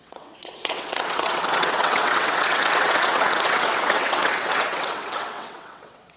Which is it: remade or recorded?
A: remade